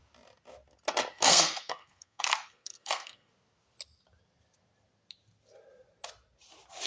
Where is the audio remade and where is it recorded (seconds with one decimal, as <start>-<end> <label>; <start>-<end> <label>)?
0.0-1.1 recorded; 1.1-3.3 remade; 3.3-6.9 recorded